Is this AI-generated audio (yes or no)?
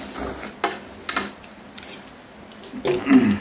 no